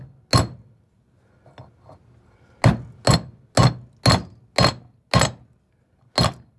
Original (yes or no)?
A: yes